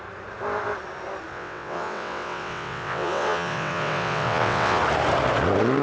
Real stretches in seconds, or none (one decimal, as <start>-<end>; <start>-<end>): 0.0-1.3; 4.8-5.8